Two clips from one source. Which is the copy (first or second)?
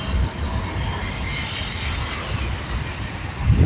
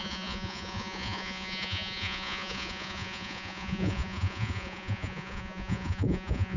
second